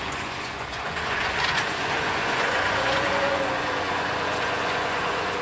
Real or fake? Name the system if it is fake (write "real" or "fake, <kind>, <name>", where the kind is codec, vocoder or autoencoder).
fake, vocoder, Vocos